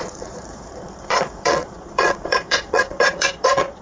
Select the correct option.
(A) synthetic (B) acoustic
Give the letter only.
A